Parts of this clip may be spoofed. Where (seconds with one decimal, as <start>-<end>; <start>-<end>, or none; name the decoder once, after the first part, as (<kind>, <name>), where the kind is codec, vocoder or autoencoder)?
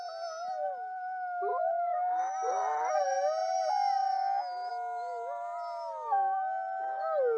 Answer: 1.5-2.2 (autoencoder, DAC-VAE)